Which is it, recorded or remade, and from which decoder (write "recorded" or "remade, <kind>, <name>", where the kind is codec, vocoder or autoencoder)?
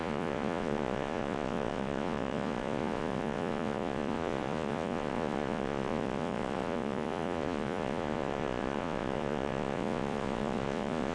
remade, vocoder, Vocos